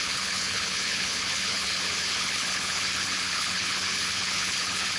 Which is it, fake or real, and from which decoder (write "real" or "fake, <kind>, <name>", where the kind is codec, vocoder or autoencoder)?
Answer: fake, codec, HILCodec